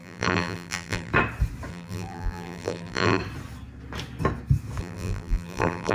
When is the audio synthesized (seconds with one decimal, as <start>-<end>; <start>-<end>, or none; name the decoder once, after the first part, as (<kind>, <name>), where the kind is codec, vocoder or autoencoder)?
0.0-1.1 (vocoder, BigVGAN v2); 1.7-3.2; 4.8-5.9